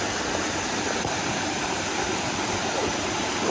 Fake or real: real